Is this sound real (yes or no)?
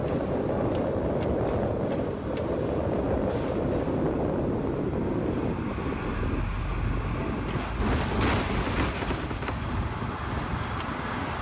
yes